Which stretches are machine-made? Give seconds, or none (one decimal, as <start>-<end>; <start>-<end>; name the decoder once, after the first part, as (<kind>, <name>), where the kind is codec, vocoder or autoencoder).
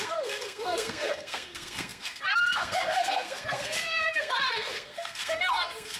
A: 0.0-6.0 (codec, SNAC)